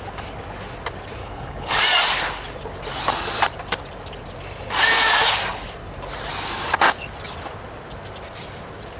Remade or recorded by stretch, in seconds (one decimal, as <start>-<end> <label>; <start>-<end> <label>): 0.0-1.2 recorded; 1.2-1.8 remade; 1.8-9.0 recorded